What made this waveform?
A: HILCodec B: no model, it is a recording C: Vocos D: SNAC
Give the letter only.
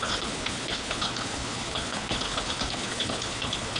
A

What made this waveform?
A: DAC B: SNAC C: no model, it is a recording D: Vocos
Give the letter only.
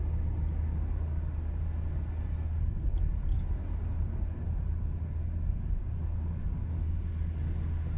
C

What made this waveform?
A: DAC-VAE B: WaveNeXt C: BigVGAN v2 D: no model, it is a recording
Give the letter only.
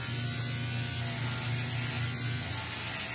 D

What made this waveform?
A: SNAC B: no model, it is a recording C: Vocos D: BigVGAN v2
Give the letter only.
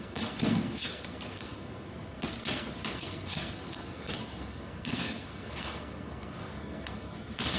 A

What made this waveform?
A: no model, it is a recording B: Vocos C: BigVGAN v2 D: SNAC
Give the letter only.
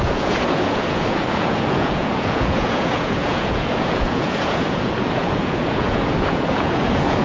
B